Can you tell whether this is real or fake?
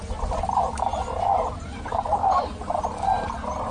real